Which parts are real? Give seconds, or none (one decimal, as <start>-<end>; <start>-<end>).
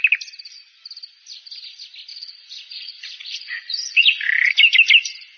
0.0-2.1; 4.3-5.4